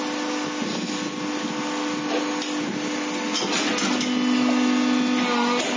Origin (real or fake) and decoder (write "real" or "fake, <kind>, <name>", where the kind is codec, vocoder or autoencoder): real